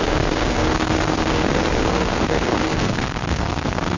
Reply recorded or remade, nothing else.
remade